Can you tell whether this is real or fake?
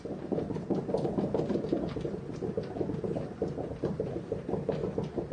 real